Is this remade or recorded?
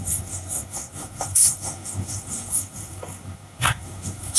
remade